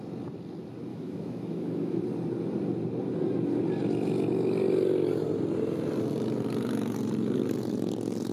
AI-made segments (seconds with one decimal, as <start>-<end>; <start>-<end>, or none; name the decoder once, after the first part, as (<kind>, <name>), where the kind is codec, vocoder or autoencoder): 0.9-2.0 (autoencoder, DAC-VAE)